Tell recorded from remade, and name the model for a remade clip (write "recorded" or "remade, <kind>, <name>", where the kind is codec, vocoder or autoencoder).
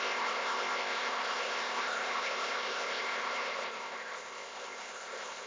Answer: remade, codec, ZipCodec